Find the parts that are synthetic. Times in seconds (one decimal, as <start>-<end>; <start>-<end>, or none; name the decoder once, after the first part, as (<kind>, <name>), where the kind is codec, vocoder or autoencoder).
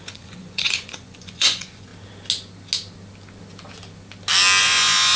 0.0-1.9 (vocoder, Vocos); 4.6-5.2